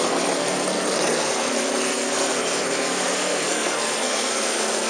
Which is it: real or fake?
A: fake